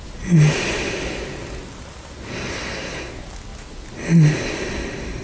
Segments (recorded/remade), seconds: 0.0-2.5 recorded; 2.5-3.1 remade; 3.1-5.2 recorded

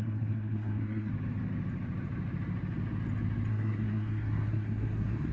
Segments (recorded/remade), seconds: 0.0-1.1 remade; 1.1-3.5 recorded; 3.5-5.3 remade

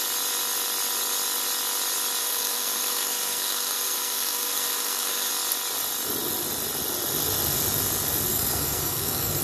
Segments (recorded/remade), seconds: 0.0-2.2 recorded; 2.2-5.3 remade; 5.3-8.3 recorded; 8.3-9.4 remade

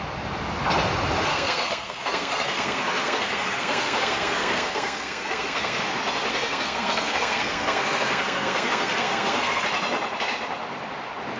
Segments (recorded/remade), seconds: 0.0-1.3 recorded; 1.3-5.8 remade; 5.8-6.3 recorded; 6.3-9.6 remade; 9.6-11.4 recorded

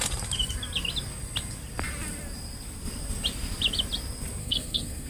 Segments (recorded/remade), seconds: 0.0-4.4 recorded; 4.4-5.1 remade

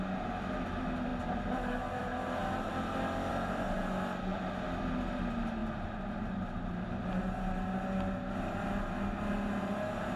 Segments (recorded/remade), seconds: 0.0-10.2 recorded